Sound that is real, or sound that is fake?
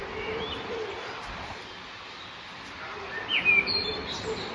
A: real